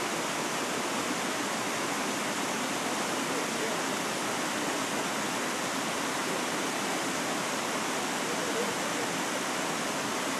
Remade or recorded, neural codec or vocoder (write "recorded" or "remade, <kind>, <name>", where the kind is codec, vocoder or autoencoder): recorded